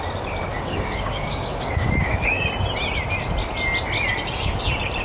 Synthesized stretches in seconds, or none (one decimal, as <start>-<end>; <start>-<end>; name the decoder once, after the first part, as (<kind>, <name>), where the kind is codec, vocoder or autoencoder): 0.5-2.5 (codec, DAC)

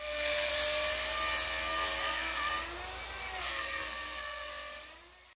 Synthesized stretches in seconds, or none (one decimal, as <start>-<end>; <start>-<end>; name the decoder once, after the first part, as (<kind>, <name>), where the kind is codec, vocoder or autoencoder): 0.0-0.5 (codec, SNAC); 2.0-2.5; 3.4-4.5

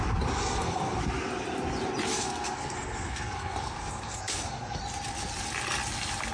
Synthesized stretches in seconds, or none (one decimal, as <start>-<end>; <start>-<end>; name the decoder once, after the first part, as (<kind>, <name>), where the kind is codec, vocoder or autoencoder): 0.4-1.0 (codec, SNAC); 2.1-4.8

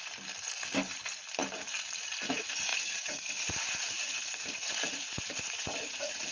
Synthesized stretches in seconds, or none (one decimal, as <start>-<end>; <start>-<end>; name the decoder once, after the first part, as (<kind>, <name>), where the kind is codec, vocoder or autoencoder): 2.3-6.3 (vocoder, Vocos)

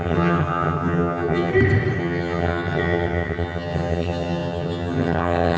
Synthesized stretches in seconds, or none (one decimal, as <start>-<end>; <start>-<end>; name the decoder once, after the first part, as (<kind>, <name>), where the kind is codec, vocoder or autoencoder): 0.0-1.5 (vocoder, HiFi-GAN); 2.0-5.6

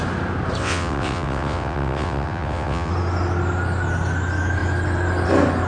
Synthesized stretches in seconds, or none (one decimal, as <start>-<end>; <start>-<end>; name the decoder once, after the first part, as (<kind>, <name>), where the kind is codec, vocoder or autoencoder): 0.6-2.9 (vocoder, WaveNeXt)